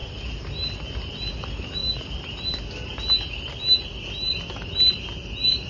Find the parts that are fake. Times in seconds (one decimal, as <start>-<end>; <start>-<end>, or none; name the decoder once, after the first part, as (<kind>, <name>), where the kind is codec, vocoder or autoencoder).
none